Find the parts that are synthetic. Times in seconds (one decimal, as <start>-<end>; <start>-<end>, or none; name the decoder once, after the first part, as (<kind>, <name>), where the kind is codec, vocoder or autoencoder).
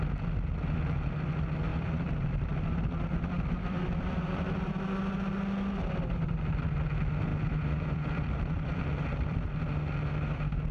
1.7-4.7 (vocoder, BigVGAN v2); 7.3-9.6